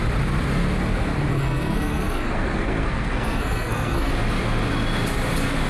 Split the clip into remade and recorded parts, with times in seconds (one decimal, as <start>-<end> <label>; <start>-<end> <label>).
0.0-1.3 recorded; 1.3-4.1 remade; 4.1-5.7 recorded